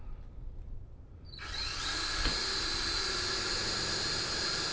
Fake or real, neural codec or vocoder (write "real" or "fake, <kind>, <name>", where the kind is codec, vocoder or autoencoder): real